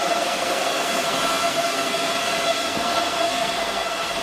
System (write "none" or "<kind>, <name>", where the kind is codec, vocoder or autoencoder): codec, SNAC